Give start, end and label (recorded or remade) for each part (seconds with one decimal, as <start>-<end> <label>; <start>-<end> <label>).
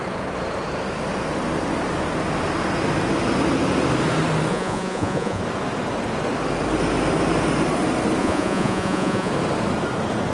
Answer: 0.0-4.5 recorded; 4.5-5.4 remade; 5.4-8.2 recorded; 8.2-9.3 remade; 9.3-10.3 recorded